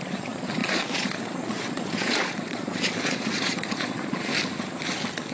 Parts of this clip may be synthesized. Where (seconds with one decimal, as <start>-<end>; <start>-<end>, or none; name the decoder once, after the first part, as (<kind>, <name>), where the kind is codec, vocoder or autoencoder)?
0.0-4.3 (vocoder, Vocos)